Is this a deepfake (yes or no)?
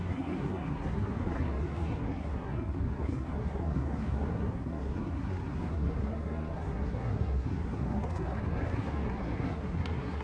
yes